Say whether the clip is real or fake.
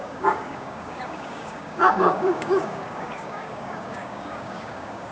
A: fake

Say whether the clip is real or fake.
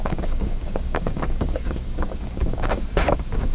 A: fake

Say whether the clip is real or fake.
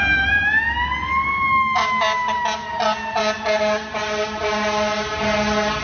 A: real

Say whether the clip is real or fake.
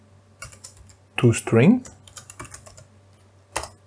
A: real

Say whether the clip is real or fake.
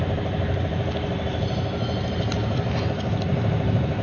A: real